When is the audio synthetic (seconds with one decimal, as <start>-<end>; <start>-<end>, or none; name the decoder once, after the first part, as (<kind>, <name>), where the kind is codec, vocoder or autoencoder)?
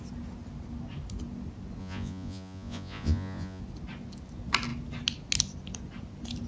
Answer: 1.8-3.6 (vocoder, Vocos)